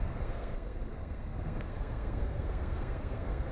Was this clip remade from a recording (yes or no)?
yes